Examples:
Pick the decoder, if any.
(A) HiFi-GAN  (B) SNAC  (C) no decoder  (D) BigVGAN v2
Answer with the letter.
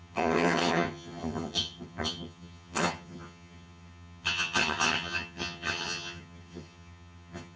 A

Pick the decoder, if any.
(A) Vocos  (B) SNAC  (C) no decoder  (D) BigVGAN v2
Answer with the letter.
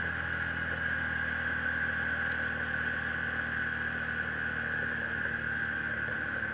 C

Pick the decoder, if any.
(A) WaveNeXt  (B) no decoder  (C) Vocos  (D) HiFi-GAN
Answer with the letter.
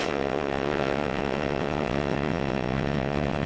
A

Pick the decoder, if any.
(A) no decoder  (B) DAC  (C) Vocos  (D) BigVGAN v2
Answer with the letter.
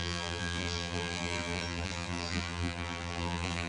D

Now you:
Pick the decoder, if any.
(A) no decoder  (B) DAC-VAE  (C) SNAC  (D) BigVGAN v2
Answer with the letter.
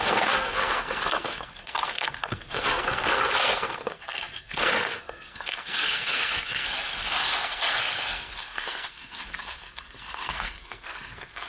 C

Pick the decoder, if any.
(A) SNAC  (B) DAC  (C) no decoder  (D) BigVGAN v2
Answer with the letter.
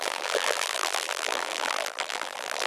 D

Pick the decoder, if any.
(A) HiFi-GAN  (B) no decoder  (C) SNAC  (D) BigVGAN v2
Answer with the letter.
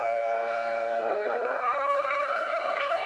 C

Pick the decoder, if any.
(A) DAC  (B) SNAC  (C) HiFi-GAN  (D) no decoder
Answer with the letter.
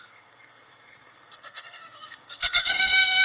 B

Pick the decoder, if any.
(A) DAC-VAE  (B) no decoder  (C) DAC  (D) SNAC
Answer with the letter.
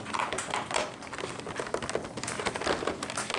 B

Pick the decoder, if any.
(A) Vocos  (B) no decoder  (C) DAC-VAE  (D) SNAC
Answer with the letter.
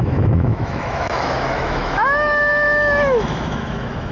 C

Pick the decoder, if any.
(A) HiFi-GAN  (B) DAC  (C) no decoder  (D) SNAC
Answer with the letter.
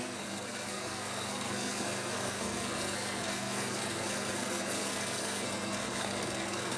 D